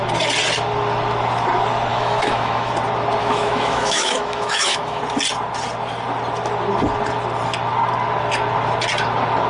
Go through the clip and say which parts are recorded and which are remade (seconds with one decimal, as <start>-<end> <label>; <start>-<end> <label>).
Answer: 0.0-1.9 recorded; 1.9-2.7 remade; 2.7-3.2 recorded; 3.2-5.0 remade; 5.0-9.5 recorded